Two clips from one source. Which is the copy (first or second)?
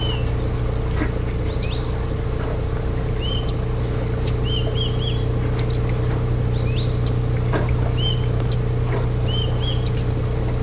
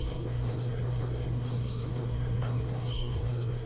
second